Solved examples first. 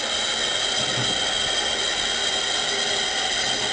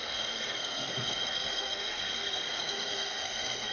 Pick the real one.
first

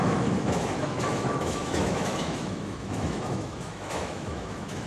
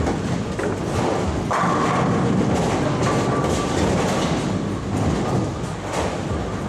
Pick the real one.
second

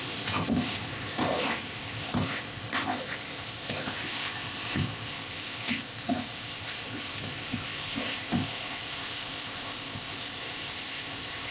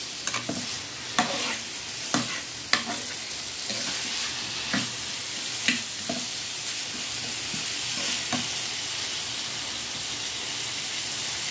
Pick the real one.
second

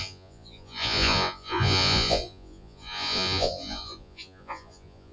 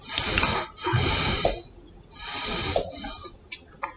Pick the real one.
second